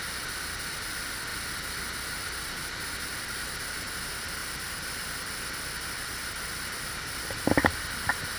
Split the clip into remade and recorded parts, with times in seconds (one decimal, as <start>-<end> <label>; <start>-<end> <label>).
0.0-8.4 recorded